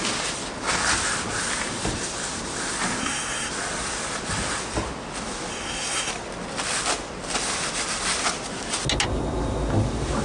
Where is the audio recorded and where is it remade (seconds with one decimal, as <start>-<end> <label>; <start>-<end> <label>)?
0.0-3.0 recorded; 3.0-3.5 remade; 3.5-5.5 recorded; 5.5-6.1 remade; 6.1-10.2 recorded